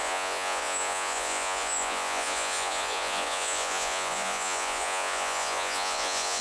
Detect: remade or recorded remade